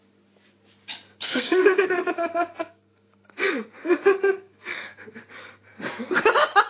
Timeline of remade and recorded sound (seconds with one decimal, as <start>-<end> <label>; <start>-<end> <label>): 0.0-1.2 recorded; 1.2-5.2 remade; 5.2-6.7 recorded